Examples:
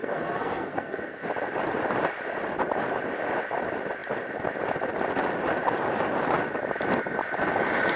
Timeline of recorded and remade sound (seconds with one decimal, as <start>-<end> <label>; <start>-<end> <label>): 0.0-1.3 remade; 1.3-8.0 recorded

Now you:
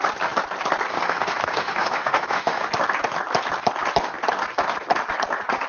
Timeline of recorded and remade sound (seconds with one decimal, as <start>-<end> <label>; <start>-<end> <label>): 0.0-0.9 recorded; 0.9-2.7 remade; 2.7-5.7 recorded

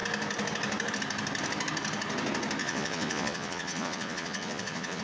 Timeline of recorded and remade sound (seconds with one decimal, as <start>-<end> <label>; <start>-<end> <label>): 0.0-2.6 recorded; 2.6-5.0 remade

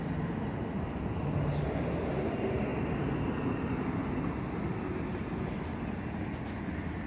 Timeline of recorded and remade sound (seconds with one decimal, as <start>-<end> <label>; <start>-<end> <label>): 0.0-7.1 recorded

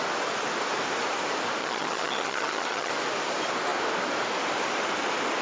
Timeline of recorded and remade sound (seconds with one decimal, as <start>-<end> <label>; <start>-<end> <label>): 0.0-1.6 recorded; 1.6-2.9 remade; 2.9-5.4 recorded

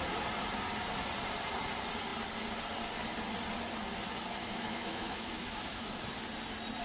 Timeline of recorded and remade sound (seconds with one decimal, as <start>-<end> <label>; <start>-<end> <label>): 0.0-4.4 recorded; 4.4-5.9 remade; 5.9-6.8 recorded

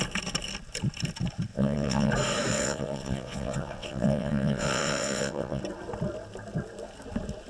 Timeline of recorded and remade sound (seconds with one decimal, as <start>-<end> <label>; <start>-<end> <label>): 0.0-1.5 recorded; 1.5-2.1 remade; 2.1-2.5 recorded; 2.5-5.6 remade; 5.6-7.5 recorded

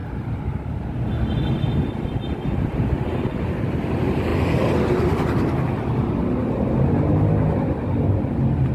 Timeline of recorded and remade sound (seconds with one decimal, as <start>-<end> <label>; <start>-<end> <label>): 0.0-4.3 recorded; 4.3-6.7 remade; 6.7-8.7 recorded